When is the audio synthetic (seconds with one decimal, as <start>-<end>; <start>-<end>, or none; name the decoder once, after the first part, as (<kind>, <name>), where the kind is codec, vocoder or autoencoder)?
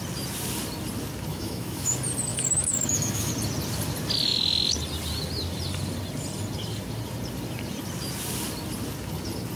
1.3-1.9 (autoencoder, DAC-VAE); 2.3-3.3